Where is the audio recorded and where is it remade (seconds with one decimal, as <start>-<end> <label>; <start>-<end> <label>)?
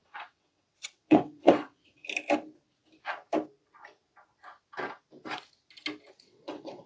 0.0-2.0 remade; 2.0-6.1 recorded; 6.1-6.9 remade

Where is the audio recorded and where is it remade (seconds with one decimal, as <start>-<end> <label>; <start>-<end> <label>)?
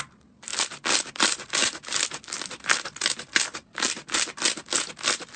0.0-5.4 recorded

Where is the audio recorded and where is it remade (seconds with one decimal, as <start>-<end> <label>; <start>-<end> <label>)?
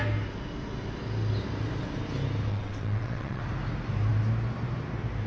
0.0-2.5 recorded; 2.5-3.4 remade; 3.4-5.3 recorded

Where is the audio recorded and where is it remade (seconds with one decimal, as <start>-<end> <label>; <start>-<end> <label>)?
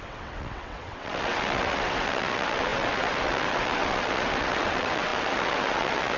0.0-6.2 remade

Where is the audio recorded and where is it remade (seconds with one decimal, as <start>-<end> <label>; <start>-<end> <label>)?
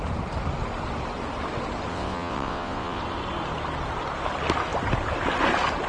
0.0-1.9 recorded; 1.9-3.0 remade; 3.0-5.9 recorded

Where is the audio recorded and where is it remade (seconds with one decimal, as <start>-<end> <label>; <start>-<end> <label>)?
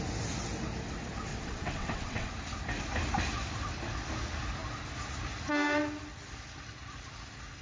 0.0-1.3 recorded; 1.3-2.3 remade; 2.3-7.6 recorded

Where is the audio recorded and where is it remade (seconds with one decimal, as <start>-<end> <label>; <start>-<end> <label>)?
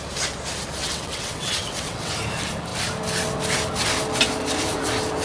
0.0-0.8 recorded; 0.8-2.1 remade; 2.1-5.2 recorded